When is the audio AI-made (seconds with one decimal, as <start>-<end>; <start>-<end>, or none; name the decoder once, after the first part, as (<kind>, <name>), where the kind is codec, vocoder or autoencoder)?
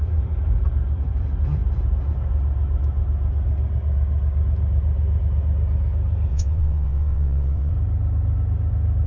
6.3-7.7 (vocoder, WaveNeXt)